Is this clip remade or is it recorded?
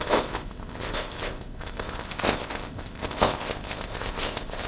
remade